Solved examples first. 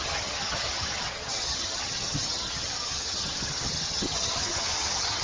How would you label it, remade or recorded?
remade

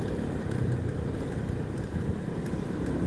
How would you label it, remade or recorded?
remade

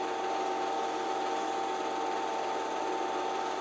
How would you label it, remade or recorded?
recorded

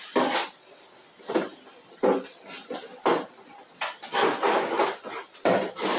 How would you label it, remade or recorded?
recorded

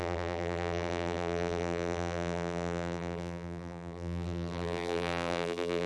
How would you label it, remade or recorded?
remade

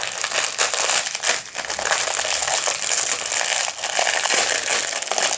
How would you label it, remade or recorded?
recorded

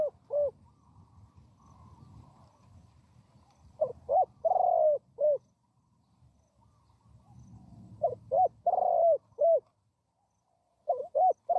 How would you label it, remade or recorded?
recorded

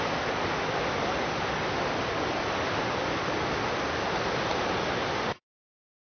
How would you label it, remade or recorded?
recorded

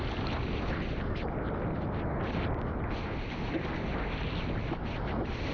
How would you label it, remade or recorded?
recorded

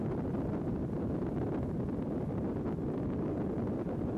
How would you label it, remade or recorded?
remade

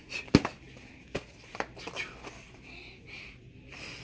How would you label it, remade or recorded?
recorded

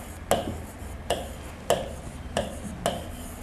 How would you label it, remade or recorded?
recorded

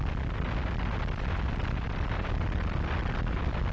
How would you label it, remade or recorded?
recorded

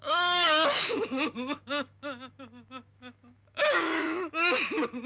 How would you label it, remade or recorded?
remade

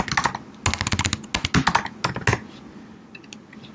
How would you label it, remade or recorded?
recorded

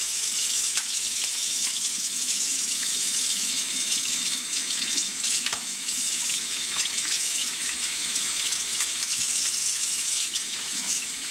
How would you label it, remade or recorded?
remade